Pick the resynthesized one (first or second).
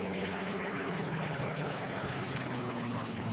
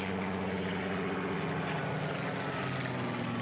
first